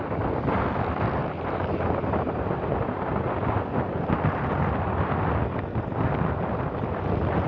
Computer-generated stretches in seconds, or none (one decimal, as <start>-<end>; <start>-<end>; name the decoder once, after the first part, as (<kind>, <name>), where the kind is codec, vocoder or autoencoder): 1.2-3.1 (vocoder, BigVGAN v2)